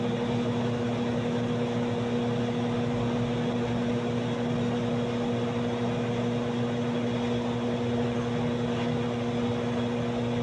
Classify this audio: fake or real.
real